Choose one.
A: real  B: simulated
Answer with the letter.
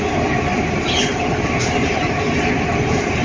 A